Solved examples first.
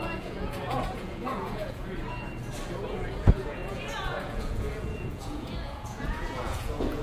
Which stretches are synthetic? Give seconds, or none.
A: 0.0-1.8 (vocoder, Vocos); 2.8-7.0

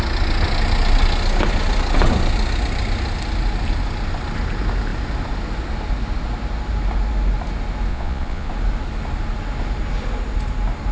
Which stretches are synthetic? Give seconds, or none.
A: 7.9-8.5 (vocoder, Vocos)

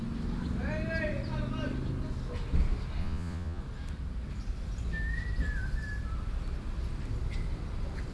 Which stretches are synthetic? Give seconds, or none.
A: 3.0-3.6 (vocoder, Vocos)

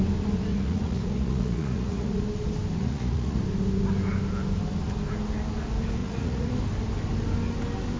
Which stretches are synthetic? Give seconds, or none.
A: 0.5-2.2 (vocoder, Vocos); 2.8-3.4; 6.0-6.5

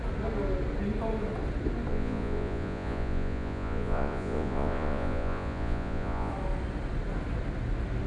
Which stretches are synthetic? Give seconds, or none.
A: 1.9-6.3 (vocoder, Vocos)